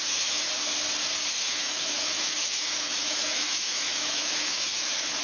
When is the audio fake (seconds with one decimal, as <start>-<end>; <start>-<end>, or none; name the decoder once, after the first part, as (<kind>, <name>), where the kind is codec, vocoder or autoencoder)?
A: 0.0-0.5 (autoencoder, DAC-VAE); 1.3-5.2